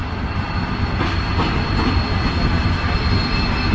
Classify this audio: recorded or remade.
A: recorded